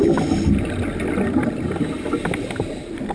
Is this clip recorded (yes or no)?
yes